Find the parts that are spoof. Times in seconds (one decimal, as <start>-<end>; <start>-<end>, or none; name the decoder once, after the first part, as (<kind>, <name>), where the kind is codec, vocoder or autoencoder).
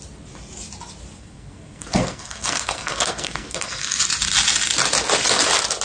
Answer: 1.2-4.0 (codec, SNAC)